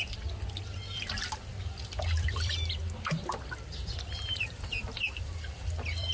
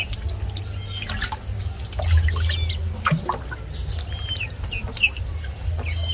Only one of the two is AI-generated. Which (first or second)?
first